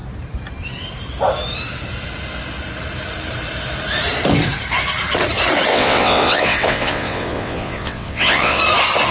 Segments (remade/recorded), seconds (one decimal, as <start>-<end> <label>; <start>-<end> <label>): 0.0-5.7 recorded; 5.7-8.6 remade; 8.6-9.1 recorded